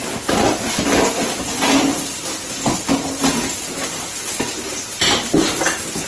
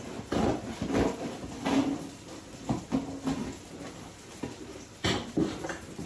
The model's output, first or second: second